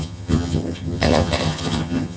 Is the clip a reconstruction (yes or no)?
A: yes